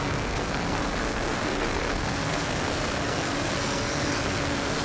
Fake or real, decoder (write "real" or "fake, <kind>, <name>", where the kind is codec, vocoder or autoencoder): fake, codec, SNAC